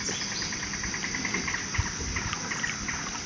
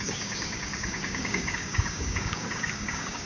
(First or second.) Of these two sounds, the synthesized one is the second